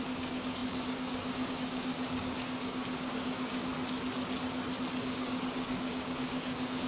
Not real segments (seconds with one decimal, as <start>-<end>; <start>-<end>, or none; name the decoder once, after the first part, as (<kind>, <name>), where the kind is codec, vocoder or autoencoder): 0.0-3.7 (codec, DAC); 5.0-6.9